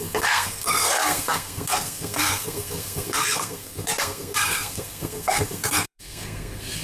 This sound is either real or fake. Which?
fake